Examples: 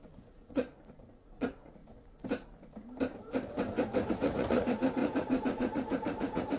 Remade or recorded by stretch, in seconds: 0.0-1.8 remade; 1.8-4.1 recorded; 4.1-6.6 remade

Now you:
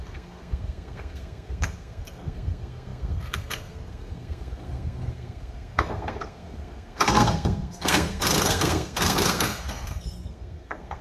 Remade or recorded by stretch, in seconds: 0.0-11.0 remade

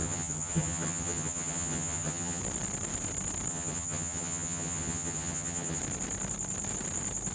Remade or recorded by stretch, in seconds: 0.0-2.4 remade; 2.4-3.5 recorded; 3.5-5.8 remade; 5.8-7.3 recorded

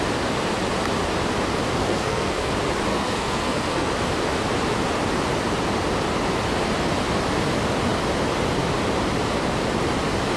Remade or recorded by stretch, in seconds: 0.0-1.8 recorded; 1.8-2.5 remade; 2.5-2.9 recorded; 2.9-3.9 remade; 3.9-10.4 recorded

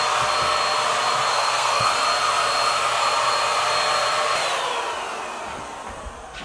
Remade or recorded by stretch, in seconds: 0.0-1.3 recorded; 1.3-1.9 remade; 1.9-6.4 recorded

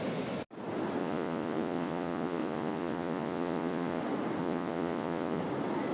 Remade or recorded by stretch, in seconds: 0.0-1.0 recorded; 1.0-4.0 remade; 4.0-4.4 recorded; 4.4-5.4 remade; 5.4-5.9 recorded

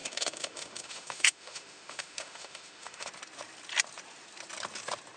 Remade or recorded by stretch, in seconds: 0.0-3.1 remade; 3.1-5.2 recorded